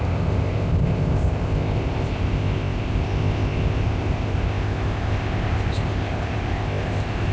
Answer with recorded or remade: remade